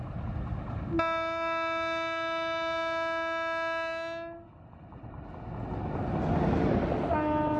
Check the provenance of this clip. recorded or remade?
recorded